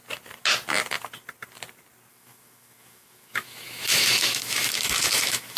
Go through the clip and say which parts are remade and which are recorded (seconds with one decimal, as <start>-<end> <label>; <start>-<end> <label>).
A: 0.0-2.1 recorded; 2.1-5.6 remade